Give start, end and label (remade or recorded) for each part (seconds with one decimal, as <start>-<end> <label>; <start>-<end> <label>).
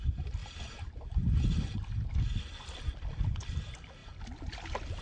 0.0-5.0 recorded